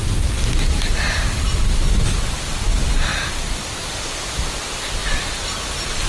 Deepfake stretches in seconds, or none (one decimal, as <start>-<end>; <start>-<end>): 0.0-0.8; 3.1-3.9